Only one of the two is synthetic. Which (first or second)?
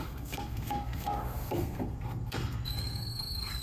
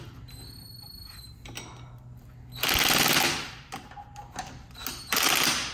first